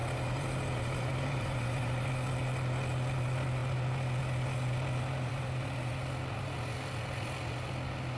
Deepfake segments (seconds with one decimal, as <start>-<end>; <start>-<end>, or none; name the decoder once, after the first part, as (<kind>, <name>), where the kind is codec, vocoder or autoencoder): 0.0-2.1 (vocoder, BigVGAN v2); 5.3-5.9